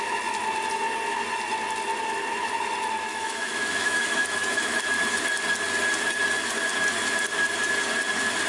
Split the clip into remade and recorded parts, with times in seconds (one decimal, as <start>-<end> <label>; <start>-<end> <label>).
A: 0.0-3.1 recorded; 3.1-4.8 remade; 4.8-8.5 recorded